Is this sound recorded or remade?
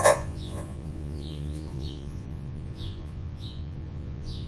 remade